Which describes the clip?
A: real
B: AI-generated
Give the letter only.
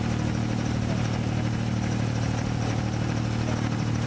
A